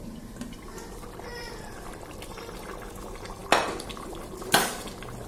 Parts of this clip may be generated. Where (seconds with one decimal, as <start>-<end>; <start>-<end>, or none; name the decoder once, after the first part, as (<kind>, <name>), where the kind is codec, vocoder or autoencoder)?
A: 1.3-2.7 (vocoder, BigVGAN v2); 3.4-4.3